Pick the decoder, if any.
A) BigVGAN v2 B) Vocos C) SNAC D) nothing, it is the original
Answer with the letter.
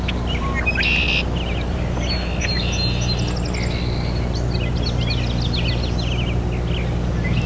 D